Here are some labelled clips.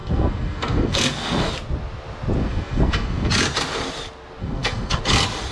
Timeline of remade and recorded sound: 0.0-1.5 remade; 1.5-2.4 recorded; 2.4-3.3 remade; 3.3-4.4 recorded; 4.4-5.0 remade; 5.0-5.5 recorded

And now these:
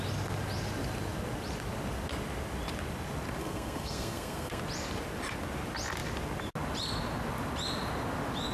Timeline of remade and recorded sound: 0.0-3.4 recorded; 3.4-4.6 remade; 4.6-8.5 recorded

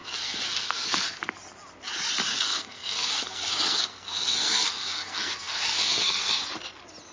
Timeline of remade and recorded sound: 0.0-1.2 remade; 1.2-2.3 recorded; 2.3-6.4 remade; 6.4-7.1 recorded

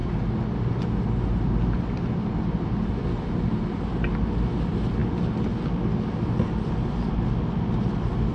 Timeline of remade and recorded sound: 0.0-8.3 recorded